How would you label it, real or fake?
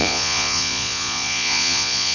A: fake